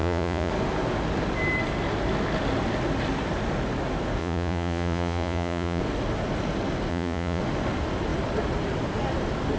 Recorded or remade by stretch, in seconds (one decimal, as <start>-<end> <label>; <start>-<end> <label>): 0.0-0.5 remade; 0.5-4.2 recorded; 4.2-5.8 remade; 5.8-6.9 recorded; 6.9-7.4 remade; 7.4-9.6 recorded